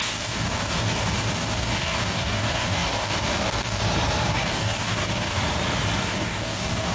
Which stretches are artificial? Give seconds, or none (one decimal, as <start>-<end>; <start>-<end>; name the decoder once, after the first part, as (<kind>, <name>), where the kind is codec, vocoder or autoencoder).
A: 0.0-3.8 (codec, DAC); 4.3-5.4; 6.0-6.9